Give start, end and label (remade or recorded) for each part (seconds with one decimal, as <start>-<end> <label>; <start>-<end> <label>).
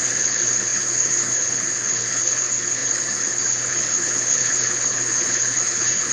0.0-6.1 remade